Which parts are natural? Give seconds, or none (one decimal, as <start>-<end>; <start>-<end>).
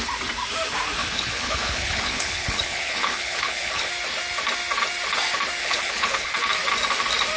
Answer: 0.0-1.0; 3.9-5.6; 6.3-7.4